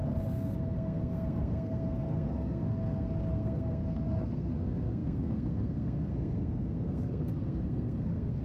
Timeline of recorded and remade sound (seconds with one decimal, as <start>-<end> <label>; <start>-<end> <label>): 0.0-8.4 remade